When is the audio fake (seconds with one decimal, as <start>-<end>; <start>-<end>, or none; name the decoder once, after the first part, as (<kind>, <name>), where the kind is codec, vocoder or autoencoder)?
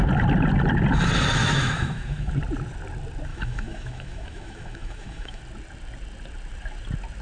1.4-2.3 (autoencoder, DAC-VAE); 3.3-5.4